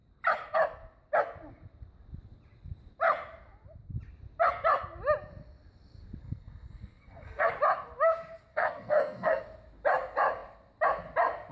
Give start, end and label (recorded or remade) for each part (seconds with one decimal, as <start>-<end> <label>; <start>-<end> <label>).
0.0-6.2 recorded; 6.2-7.5 remade; 7.5-8.5 recorded; 8.5-9.4 remade; 9.4-11.5 recorded